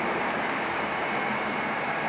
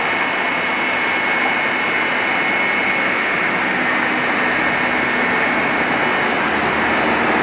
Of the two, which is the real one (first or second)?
second